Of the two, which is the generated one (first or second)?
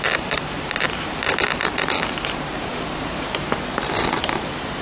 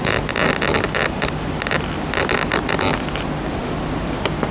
first